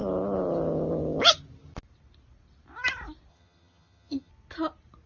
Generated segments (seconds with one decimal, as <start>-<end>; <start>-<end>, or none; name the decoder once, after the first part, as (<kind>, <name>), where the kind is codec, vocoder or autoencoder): 3.3-4.3 (vocoder, HiFi-GAN)